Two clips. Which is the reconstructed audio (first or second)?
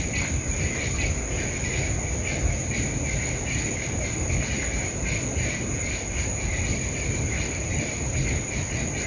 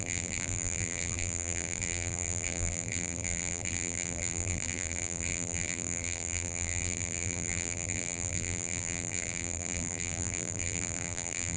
second